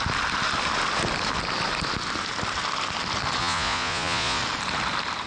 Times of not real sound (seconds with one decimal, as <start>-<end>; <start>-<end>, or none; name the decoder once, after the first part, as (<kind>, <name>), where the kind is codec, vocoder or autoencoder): 3.4-4.4 (vocoder, Vocos)